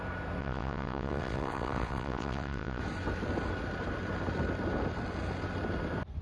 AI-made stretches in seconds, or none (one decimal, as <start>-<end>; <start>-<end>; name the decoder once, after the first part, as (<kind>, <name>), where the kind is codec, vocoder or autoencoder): 0.4-2.8 (vocoder, WaveNeXt)